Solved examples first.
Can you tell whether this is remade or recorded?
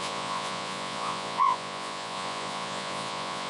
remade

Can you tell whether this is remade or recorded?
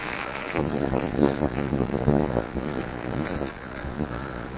remade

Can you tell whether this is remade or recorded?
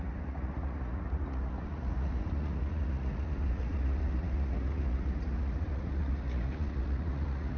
remade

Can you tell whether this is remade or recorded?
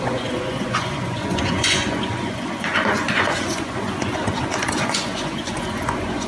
remade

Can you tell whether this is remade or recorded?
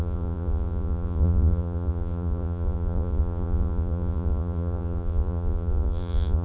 remade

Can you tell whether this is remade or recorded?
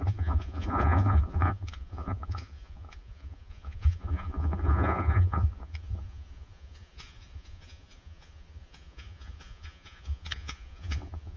remade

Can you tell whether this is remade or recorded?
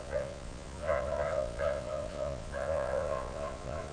remade